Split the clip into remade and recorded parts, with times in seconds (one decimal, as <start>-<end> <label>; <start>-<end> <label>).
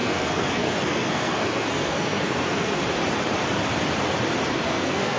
0.0-2.8 remade; 2.8-4.5 recorded; 4.5-5.2 remade